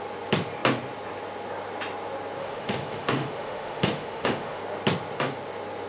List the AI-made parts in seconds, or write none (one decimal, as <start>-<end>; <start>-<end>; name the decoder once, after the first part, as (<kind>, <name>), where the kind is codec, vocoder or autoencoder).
2.4-4.6 (autoencoder, DAC-VAE)